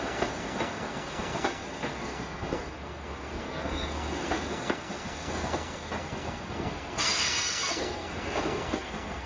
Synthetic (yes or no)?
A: yes